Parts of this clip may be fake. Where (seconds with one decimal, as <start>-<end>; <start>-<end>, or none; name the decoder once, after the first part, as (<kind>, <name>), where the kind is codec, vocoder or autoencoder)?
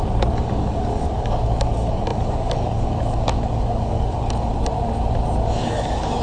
0.0-4.5 (codec, DAC); 5.5-6.2